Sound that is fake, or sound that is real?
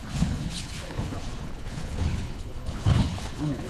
fake